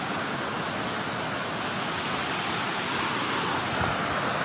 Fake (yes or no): no